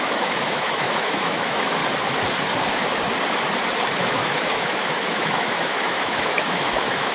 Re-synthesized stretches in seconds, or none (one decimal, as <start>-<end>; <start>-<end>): 0.0-1.8; 4.0-7.1